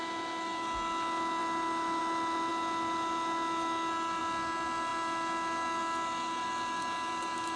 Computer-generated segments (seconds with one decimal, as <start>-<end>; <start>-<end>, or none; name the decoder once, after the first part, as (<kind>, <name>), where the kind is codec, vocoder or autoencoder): none